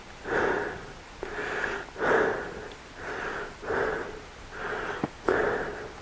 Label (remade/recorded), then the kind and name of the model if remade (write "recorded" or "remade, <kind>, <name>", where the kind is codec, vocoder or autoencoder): recorded